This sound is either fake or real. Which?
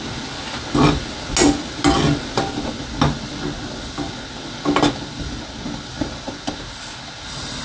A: real